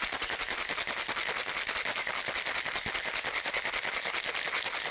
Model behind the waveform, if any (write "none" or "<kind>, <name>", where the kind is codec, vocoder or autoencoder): none